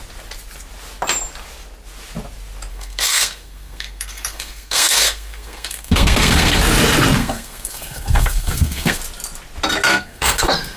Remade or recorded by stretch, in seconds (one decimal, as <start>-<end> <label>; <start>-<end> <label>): 0.0-2.7 recorded; 2.7-6.6 remade; 6.6-7.2 recorded; 7.2-9.0 remade; 9.0-9.9 recorded; 9.9-10.8 remade